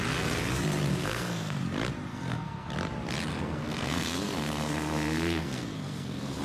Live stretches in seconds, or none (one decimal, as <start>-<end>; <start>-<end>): 0.0-0.9; 1.6-2.1; 2.7-3.3